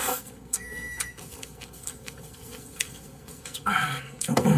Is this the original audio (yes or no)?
no